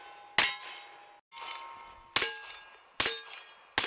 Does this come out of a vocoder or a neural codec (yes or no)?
no